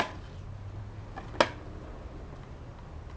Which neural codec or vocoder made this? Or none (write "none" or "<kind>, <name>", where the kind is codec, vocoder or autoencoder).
none